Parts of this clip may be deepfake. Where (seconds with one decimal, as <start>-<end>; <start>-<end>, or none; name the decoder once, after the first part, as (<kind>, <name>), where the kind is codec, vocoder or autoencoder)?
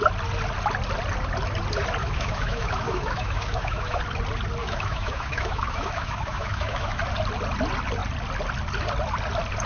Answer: 2.0-4.0 (autoencoder, DAC-VAE); 4.6-7.0